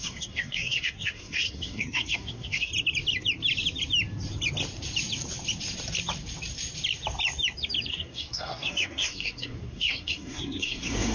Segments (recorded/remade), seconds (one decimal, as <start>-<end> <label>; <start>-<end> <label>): 0.0-2.7 remade; 2.7-7.9 recorded; 7.9-11.1 remade